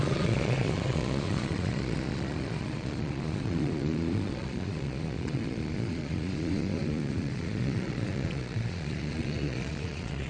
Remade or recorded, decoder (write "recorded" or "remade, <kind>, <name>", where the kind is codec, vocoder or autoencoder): remade, vocoder, Vocos